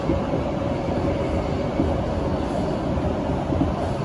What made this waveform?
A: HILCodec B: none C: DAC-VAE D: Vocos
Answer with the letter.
B